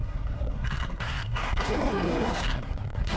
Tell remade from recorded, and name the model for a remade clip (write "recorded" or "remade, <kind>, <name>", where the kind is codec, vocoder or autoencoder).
remade, codec, SNAC